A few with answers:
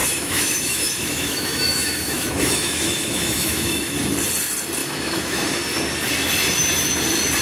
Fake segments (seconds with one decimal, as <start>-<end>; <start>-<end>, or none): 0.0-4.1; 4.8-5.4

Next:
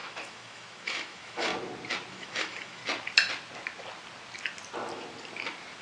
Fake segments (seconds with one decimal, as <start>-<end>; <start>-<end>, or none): 0.0-1.5; 2.1-2.8

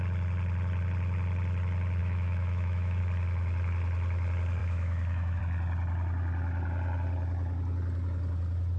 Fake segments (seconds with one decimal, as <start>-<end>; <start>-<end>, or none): 2.0-3.0; 4.6-5.4

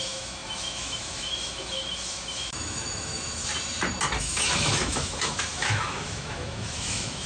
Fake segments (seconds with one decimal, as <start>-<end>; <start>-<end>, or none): 0.0-3.5; 4.2-7.3